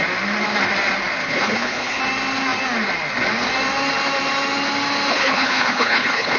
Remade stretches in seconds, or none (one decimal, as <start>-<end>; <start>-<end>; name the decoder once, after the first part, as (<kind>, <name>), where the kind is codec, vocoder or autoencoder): 1.2-2.0 (codec, HILCodec); 5.1-6.4